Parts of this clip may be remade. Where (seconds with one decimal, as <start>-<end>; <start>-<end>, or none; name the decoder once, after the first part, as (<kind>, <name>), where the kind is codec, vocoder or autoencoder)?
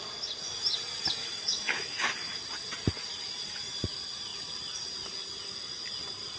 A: 1.2-2.4 (autoencoder, DAC-VAE)